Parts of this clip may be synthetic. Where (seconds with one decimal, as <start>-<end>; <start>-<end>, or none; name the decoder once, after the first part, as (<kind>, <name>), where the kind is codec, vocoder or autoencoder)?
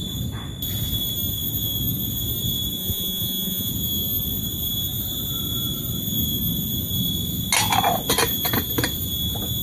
2.8-3.7 (vocoder, Vocos)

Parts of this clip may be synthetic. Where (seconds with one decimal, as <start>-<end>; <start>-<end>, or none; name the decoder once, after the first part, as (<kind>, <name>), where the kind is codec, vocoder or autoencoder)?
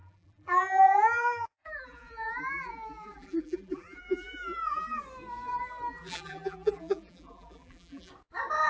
0.0-5.0 (vocoder, BigVGAN v2); 5.9-8.1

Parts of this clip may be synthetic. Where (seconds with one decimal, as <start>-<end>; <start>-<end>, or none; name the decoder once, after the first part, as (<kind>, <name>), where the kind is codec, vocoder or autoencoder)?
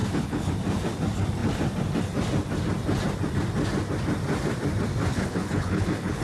0.0-0.5 (codec, HILCodec); 5.1-6.2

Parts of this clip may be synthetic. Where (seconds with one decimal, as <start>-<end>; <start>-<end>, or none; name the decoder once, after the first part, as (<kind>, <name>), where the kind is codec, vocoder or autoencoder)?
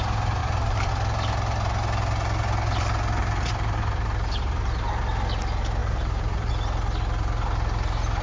0.4-0.9 (vocoder, BigVGAN v2); 3.2-5.0; 5.8-6.5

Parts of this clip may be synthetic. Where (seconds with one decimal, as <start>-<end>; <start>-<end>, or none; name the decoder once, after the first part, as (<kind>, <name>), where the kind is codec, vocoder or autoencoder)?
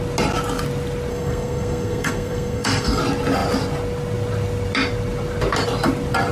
1.1-3.0 (codec, SNAC)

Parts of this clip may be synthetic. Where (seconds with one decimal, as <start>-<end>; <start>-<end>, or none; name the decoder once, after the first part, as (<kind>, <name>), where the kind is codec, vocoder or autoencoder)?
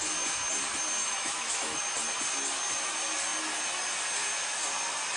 1.0-1.8 (autoencoder, DAC-VAE)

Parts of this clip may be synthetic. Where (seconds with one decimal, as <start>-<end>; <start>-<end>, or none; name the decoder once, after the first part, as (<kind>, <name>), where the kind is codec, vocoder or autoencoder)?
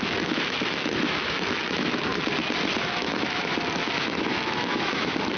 0.0-2.1 (autoencoder, DAC-VAE); 2.8-3.5; 4.0-5.4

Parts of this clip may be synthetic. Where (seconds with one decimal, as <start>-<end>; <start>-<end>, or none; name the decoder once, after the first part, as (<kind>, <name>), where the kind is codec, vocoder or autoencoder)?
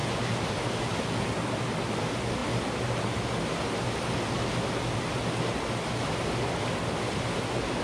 none